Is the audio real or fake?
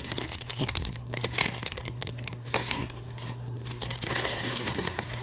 fake